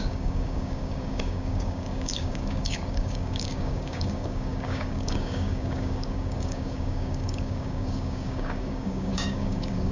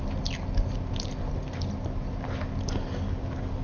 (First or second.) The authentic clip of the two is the second